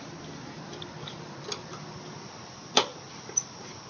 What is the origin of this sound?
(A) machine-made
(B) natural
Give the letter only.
B